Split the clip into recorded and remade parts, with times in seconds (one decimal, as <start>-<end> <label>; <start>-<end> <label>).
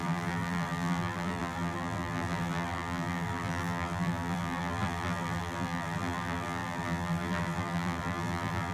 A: 0.0-8.7 remade